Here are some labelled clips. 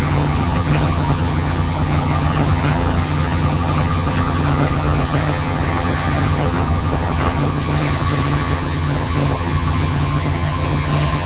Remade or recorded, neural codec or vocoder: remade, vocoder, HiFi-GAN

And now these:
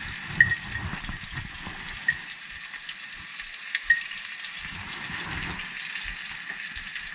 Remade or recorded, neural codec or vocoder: recorded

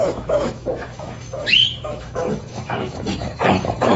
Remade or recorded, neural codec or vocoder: remade, autoencoder, DAC-VAE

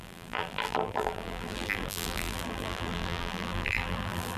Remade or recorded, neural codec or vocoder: remade, vocoder, BigVGAN v2